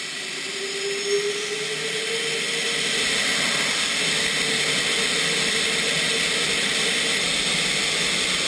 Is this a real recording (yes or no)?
yes